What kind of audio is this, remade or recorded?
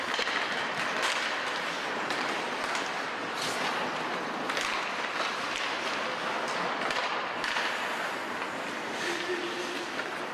recorded